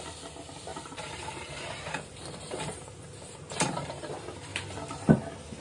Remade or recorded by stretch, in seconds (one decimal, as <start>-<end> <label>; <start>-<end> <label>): 0.0-0.7 recorded; 0.7-4.1 remade; 4.1-4.5 recorded; 4.5-5.1 remade; 5.1-5.6 recorded